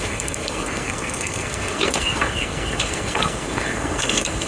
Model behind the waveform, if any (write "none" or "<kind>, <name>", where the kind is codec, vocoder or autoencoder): codec, SNAC